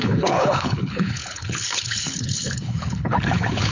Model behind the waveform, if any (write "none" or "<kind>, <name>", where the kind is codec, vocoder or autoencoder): codec, HILCodec